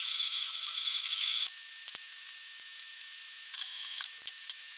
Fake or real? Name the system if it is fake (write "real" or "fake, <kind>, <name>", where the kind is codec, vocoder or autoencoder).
fake, autoencoder, DAC-VAE